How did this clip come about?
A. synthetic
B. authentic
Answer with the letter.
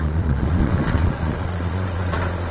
A